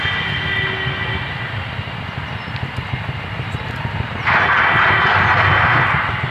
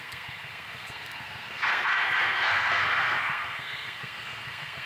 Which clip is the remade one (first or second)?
second